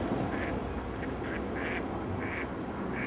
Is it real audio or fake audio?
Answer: real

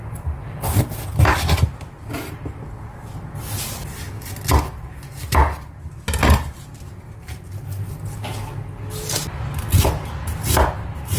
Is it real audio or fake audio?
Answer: real